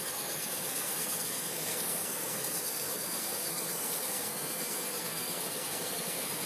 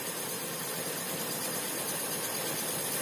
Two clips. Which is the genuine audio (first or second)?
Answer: second